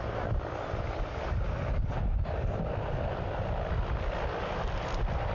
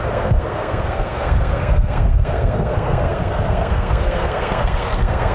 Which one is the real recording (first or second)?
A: first